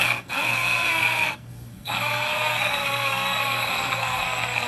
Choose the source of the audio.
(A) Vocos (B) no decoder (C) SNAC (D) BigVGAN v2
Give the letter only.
C